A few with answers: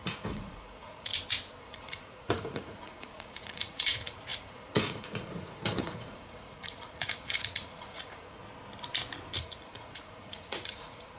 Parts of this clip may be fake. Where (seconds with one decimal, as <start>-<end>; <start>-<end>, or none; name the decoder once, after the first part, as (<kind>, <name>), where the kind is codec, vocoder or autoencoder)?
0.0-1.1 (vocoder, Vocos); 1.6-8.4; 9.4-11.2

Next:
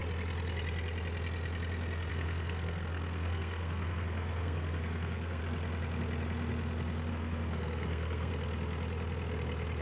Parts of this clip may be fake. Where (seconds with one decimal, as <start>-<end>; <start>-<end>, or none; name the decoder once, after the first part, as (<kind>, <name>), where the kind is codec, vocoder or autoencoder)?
2.1-5.4 (codec, SNAC); 7.1-8.3

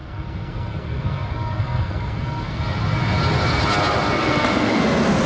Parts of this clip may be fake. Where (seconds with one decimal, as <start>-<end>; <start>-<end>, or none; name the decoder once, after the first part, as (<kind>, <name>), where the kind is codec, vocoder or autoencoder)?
0.0-2.6 (codec, SNAC); 4.2-4.8

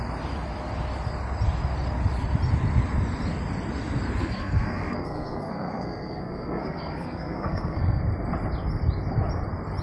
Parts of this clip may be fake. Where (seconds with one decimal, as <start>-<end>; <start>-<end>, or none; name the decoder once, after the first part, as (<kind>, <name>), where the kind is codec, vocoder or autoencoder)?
4.2-8.0 (codec, SNAC)

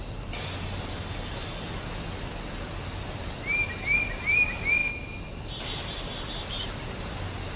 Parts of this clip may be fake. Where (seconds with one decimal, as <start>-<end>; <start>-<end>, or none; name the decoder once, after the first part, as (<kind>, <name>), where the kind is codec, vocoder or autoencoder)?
none

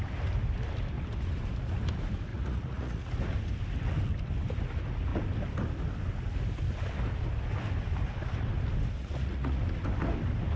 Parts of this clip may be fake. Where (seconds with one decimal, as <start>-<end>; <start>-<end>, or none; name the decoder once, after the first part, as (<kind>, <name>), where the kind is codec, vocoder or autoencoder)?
2.3-3.1 (vocoder, Vocos); 9.0-9.6

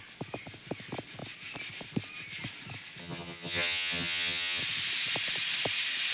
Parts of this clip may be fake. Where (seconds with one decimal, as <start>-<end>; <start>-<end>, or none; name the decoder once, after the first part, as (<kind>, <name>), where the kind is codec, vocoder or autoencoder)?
3.0-4.6 (vocoder, HiFi-GAN)

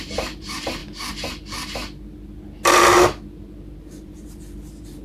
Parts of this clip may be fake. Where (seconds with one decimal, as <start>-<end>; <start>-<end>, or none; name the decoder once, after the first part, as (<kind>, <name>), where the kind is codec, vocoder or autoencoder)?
0.0-0.8 (vocoder, BigVGAN v2); 3.8-5.0